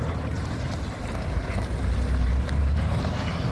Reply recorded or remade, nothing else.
remade